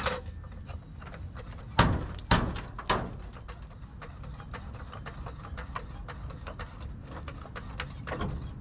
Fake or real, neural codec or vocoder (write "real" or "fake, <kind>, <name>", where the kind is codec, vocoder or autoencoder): real